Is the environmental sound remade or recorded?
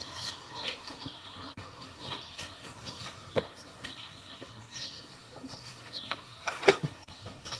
remade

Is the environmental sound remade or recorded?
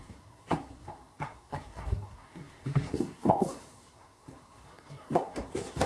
remade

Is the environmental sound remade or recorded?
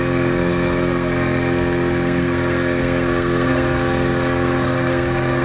remade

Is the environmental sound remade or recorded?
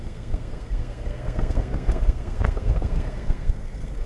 remade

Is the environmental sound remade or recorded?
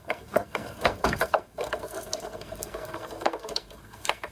remade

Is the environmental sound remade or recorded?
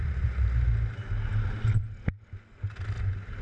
recorded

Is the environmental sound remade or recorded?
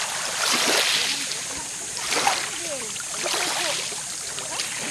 recorded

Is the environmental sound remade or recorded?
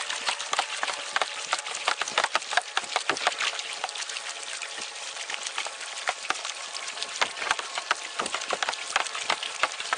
recorded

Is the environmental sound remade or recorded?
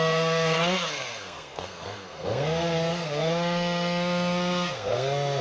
remade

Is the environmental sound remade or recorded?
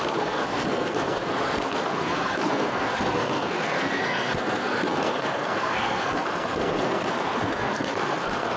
remade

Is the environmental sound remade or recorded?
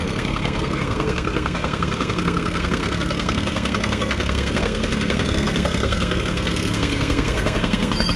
remade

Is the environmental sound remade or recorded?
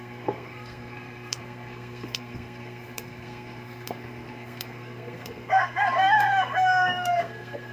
remade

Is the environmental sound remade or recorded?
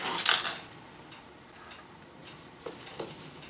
recorded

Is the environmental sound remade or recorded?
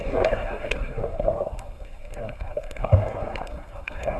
remade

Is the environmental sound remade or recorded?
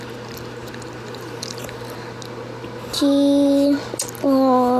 recorded